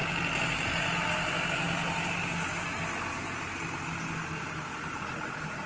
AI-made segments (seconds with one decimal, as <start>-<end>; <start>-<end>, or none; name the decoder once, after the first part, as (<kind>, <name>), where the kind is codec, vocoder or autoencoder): none